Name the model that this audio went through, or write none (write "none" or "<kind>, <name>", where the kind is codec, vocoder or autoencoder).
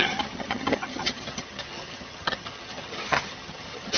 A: vocoder, HiFi-GAN